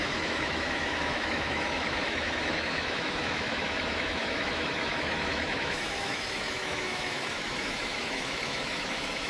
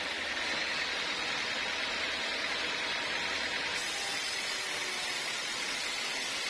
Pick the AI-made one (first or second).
first